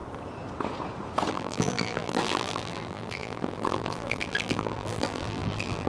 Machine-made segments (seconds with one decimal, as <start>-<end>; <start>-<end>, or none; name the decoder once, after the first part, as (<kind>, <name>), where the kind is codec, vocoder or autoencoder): 1.3-5.9 (vocoder, BigVGAN v2)